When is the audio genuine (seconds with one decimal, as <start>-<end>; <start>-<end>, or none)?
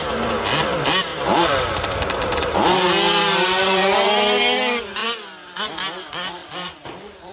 0.0-1.1; 4.1-6.4